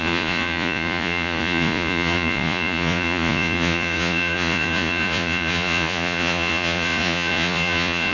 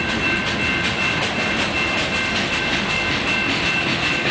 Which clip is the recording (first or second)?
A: second